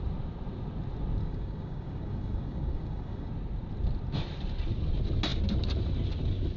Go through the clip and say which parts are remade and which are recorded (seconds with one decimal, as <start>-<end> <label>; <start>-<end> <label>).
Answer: 0.0-1.2 recorded; 1.2-3.3 remade; 3.3-6.6 recorded